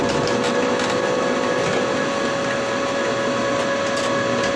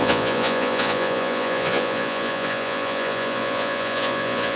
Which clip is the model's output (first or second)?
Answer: second